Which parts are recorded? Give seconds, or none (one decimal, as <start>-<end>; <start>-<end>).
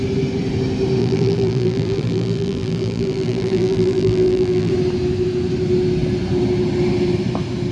0.0-1.0; 4.7-7.7